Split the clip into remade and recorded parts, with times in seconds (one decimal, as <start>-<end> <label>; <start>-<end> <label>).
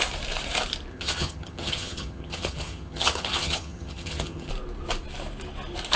0.0-0.9 recorded; 0.9-4.5 remade; 4.5-6.0 recorded